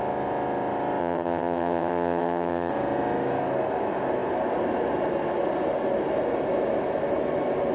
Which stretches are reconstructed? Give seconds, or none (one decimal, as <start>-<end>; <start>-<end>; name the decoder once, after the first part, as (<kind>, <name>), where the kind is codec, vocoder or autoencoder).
1.0-2.7 (vocoder, HiFi-GAN)